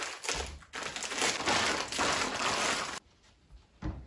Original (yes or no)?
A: yes